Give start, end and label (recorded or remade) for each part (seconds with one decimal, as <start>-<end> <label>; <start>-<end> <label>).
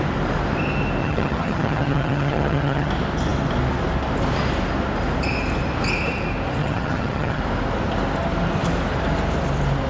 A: 0.0-1.0 recorded; 1.0-2.9 remade; 2.9-6.6 recorded; 6.6-7.4 remade; 7.4-9.9 recorded